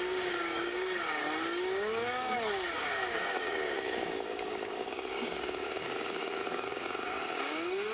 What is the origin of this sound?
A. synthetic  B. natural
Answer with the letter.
A